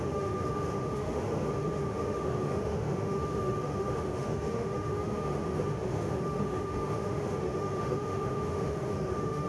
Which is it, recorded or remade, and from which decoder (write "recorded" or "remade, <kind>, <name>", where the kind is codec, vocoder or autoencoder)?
remade, autoencoder, DAC-VAE